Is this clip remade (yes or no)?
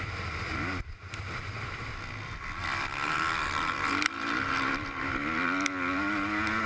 no